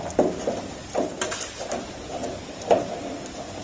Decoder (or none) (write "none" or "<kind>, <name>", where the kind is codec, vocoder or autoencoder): none